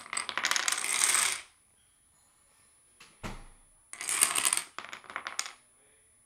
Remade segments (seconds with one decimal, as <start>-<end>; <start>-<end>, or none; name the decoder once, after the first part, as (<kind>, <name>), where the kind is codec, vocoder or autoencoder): 0.9-2.6 (vocoder, BigVGAN v2)